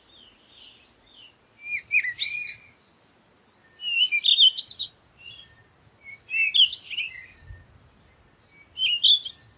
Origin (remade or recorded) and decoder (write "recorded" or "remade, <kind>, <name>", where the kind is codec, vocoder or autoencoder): recorded